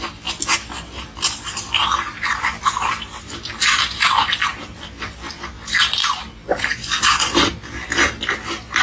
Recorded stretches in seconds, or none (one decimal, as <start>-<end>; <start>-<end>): 0.0-8.8